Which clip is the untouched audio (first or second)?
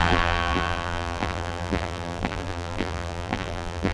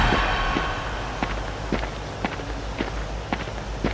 second